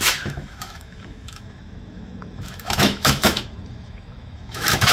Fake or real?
fake